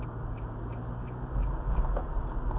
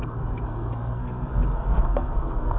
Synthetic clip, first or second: second